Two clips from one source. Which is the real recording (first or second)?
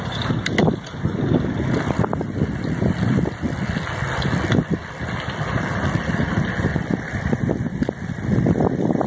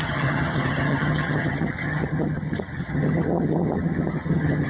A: first